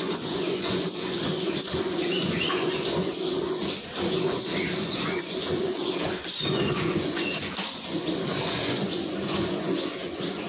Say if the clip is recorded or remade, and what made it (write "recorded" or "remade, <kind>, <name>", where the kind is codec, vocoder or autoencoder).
remade, vocoder, Vocos